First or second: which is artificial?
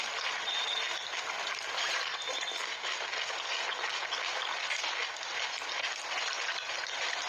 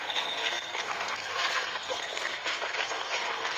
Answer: second